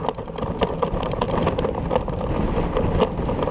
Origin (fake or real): real